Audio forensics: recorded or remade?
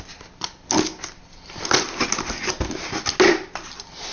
recorded